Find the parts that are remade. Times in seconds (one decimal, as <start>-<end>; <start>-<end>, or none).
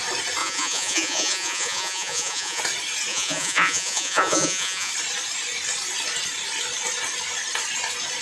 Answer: 0.4-2.6; 3.1-4.9